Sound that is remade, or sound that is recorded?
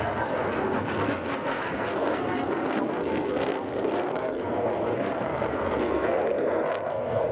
remade